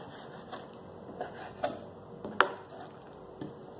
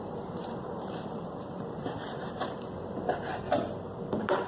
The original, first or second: first